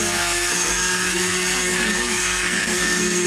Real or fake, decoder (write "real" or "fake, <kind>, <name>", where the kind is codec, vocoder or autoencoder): fake, codec, SNAC